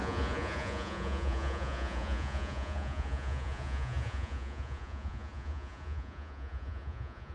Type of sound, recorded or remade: remade